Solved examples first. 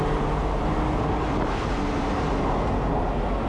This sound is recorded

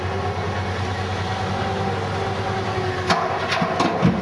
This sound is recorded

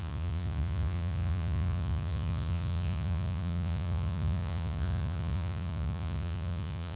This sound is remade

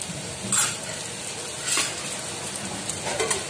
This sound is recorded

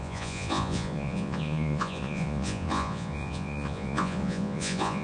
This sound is remade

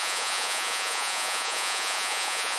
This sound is remade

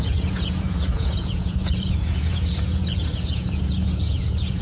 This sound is remade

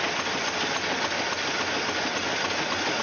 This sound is recorded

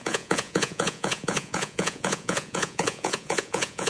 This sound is remade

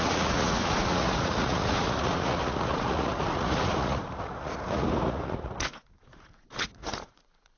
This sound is remade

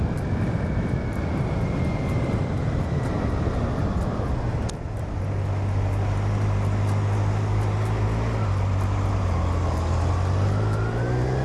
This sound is recorded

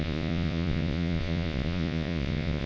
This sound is remade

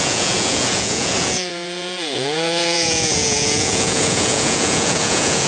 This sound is remade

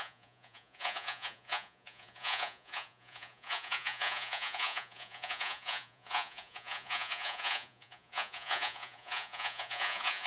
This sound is remade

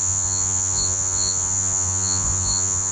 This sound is remade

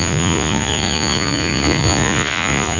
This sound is remade